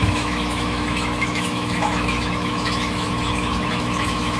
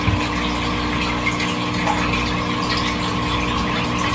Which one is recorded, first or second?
second